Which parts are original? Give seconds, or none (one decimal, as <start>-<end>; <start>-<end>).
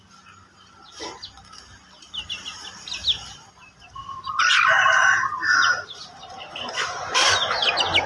0.0-8.1